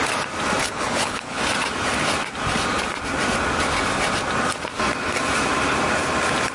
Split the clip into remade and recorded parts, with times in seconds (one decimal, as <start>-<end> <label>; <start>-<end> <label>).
0.0-0.6 recorded; 0.6-1.4 remade; 1.4-6.5 recorded

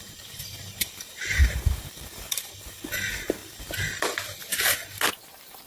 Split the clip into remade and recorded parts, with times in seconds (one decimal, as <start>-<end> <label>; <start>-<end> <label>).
0.0-3.4 remade; 3.4-5.1 recorded; 5.1-5.7 remade

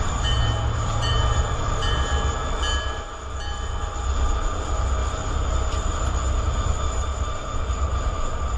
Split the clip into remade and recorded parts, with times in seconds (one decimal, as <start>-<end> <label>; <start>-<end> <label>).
0.0-2.1 remade; 2.1-4.0 recorded; 4.0-5.0 remade; 5.0-6.4 recorded; 6.4-8.6 remade